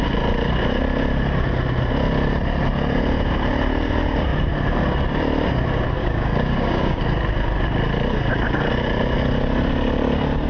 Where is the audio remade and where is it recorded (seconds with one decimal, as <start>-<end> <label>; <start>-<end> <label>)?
0.0-6.0 recorded; 6.0-7.0 remade; 7.0-10.5 recorded